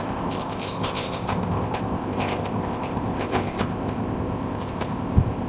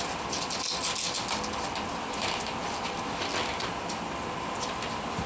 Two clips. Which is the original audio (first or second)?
second